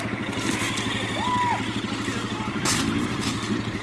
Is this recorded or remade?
recorded